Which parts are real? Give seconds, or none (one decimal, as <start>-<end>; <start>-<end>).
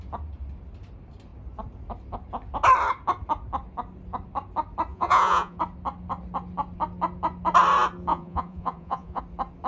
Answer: 0.0-4.9; 5.6-8.1; 9.2-9.7